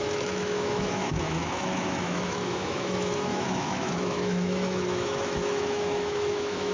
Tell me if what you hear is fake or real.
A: fake